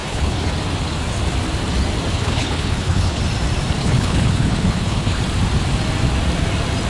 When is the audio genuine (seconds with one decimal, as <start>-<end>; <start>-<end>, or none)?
0.5-2.1; 3.2-3.8; 5.2-6.9